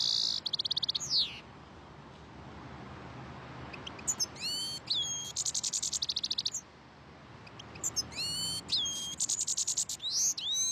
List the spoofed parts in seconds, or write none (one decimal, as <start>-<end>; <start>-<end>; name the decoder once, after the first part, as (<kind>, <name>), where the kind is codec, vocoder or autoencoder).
none